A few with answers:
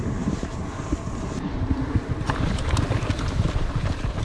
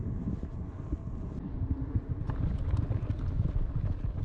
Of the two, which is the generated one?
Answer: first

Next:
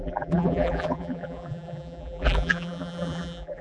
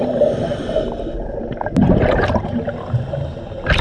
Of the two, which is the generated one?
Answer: first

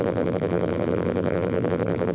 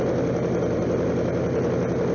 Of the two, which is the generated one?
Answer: first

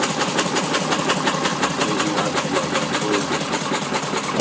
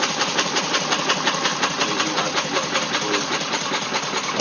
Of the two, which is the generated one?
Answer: second